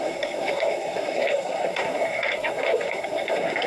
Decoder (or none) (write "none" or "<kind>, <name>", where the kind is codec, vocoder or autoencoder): codec, SNAC